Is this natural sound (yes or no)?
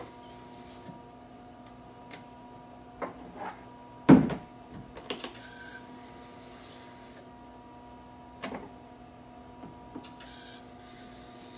yes